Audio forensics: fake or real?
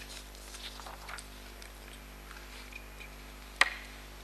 real